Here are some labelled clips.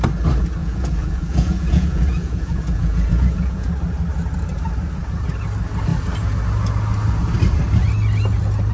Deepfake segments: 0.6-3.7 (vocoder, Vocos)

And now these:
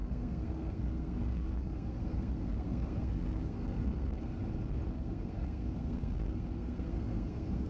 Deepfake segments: 0.0-4.4 (codec, SNAC); 4.9-7.7

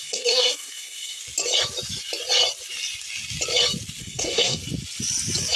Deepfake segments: 0.0-1.2 (codec, SNAC); 4.0-4.6

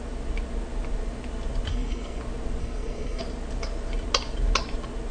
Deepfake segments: 1.7-2.2 (codec, SNAC); 2.6-3.2

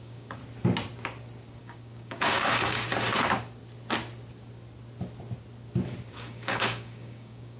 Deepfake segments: 0.0-0.4 (codec, DAC); 1.6-2.9; 6.1-7.6

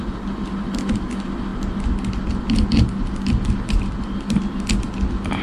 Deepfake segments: none

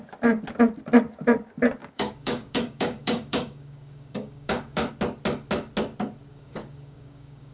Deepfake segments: 1.8-4.9 (codec, DAC); 6.3-7.5

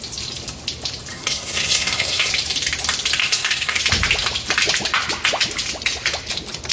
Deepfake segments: 1.1-2.3 (codec, SNAC); 3.2-3.8